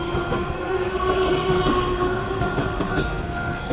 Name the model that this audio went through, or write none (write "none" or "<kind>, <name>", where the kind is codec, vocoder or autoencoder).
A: codec, SNAC